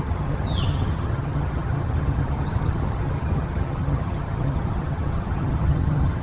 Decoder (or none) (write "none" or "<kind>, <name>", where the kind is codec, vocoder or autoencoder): vocoder, HiFi-GAN